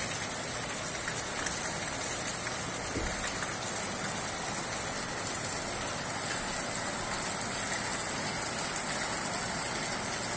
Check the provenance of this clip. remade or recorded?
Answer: recorded